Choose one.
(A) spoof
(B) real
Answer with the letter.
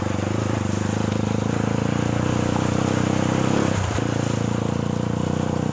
B